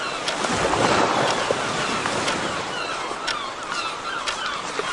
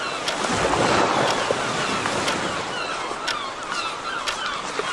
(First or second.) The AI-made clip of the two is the first